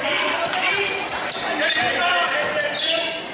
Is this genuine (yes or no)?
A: yes